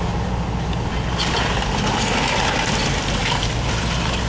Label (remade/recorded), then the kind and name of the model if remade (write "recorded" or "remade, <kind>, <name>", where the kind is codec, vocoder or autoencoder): recorded